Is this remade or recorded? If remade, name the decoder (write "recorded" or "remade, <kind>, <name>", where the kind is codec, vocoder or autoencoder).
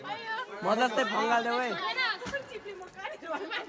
recorded